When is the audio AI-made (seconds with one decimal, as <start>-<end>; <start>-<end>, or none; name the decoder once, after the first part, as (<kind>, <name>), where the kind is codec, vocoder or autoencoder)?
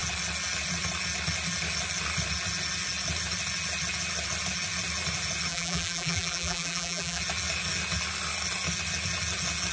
5.5-7.2 (vocoder, BigVGAN v2)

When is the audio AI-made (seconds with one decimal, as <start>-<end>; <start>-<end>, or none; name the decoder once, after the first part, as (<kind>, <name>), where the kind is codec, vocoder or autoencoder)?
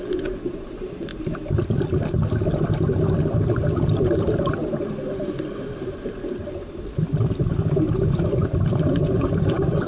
0.0-1.1 (vocoder, BigVGAN v2); 5.6-9.9